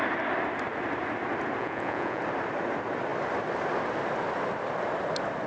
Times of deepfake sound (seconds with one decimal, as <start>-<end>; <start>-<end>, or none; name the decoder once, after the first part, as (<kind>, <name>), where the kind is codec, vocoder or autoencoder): 1.6-2.2 (vocoder, Vocos)

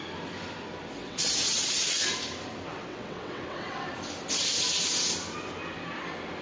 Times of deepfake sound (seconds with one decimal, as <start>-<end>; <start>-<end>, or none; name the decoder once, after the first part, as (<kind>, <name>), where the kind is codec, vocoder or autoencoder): 1.0-2.0 (vocoder, WaveNeXt); 2.7-3.9

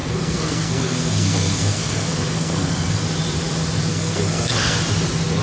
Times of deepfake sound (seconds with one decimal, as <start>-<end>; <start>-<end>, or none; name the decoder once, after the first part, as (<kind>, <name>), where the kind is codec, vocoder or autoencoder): 0.0-3.0 (codec, SNAC); 3.9-4.8